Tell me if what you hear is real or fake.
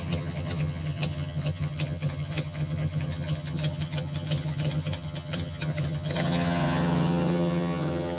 fake